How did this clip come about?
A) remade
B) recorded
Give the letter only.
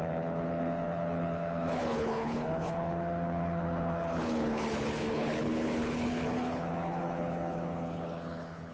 A